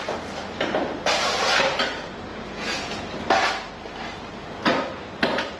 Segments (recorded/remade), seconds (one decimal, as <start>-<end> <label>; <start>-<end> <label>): 0.0-2.3 recorded; 2.3-3.0 remade; 3.0-5.6 recorded